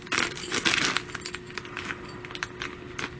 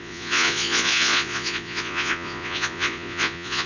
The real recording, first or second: first